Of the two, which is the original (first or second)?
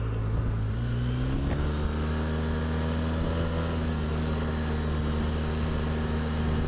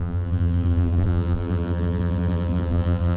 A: first